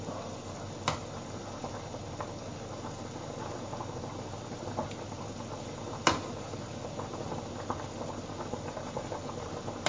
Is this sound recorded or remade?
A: recorded